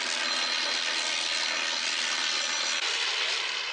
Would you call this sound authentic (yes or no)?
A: yes